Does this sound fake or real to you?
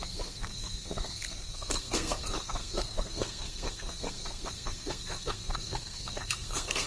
fake